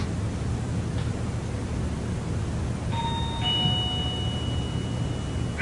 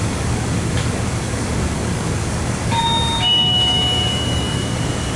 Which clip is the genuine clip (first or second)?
first